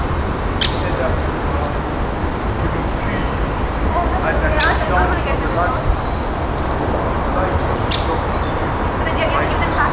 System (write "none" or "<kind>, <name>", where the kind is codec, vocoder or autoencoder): none